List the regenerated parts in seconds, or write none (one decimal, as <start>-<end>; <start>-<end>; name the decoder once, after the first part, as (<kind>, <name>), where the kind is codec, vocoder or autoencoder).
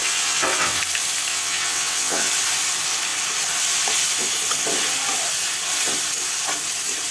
0.0-0.8 (vocoder, WaveNeXt); 1.3-2.3